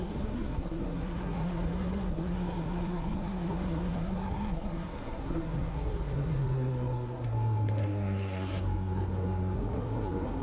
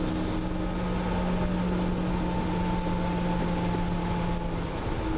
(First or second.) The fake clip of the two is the first